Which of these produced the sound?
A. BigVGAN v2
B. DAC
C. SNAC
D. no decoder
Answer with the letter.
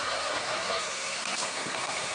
C